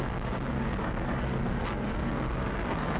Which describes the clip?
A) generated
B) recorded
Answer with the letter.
A